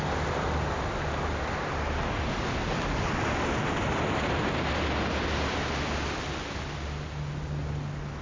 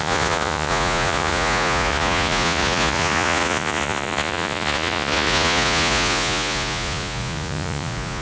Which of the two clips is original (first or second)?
first